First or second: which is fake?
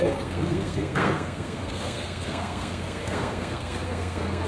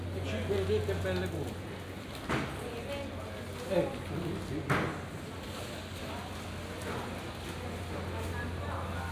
first